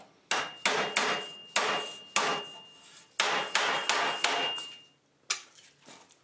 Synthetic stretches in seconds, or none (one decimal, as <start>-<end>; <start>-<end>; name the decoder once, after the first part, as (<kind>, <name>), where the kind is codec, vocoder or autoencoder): none